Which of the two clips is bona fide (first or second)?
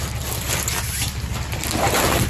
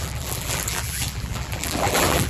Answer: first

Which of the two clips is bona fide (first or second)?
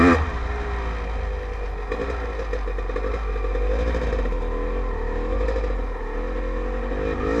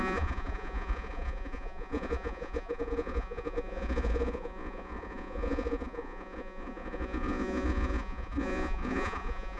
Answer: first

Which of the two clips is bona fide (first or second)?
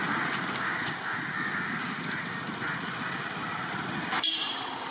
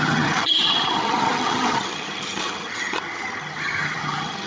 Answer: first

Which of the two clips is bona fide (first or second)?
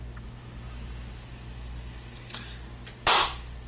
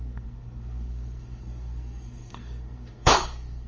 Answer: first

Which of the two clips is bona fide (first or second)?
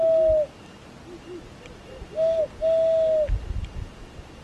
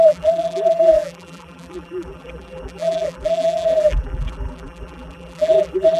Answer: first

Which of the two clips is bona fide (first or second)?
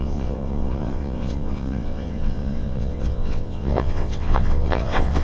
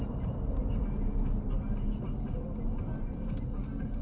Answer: second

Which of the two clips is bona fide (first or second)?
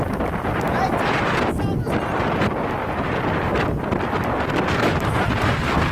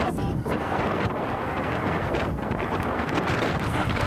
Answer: first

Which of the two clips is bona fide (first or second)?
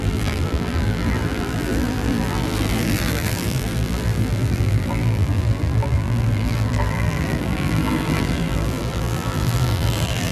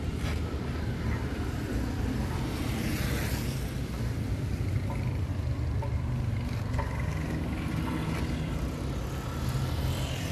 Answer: second